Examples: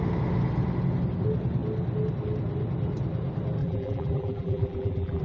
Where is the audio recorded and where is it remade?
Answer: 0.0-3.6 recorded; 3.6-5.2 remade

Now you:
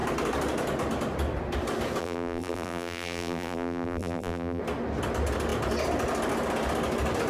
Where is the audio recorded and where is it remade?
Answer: 0.0-2.0 recorded; 2.0-4.6 remade; 4.6-7.3 recorded

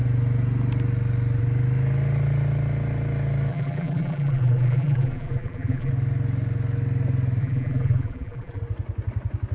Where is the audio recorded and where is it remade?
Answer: 0.0-3.5 recorded; 3.5-5.9 remade; 5.9-7.4 recorded; 7.4-8.6 remade; 8.6-9.5 recorded

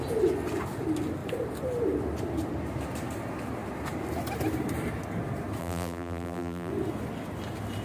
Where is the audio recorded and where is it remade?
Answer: 0.0-5.6 recorded; 5.6-6.7 remade; 6.7-7.8 recorded

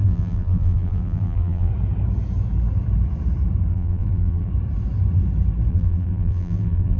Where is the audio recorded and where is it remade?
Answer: 0.0-1.7 remade; 1.7-3.7 recorded; 3.7-4.5 remade; 4.5-5.7 recorded; 5.7-7.0 remade

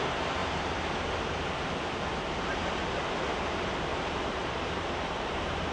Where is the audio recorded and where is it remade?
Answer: 0.0-0.4 recorded; 0.4-1.7 remade; 1.7-3.9 recorded; 3.9-5.7 remade

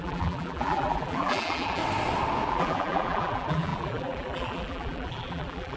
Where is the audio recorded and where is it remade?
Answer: 0.0-1.8 remade; 1.8-2.5 recorded; 2.5-5.8 remade

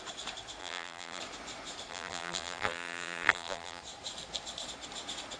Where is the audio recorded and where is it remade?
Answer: 0.0-0.6 recorded; 0.6-1.2 remade; 1.2-1.9 recorded; 1.9-3.8 remade; 3.8-5.4 recorded